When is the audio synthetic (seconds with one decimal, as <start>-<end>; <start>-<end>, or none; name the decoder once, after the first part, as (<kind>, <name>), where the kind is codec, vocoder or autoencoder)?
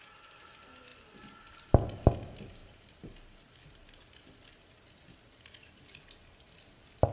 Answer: none